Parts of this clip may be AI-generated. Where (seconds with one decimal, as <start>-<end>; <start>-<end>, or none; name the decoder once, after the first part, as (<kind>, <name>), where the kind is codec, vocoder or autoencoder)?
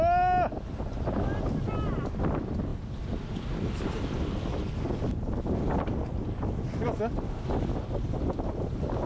none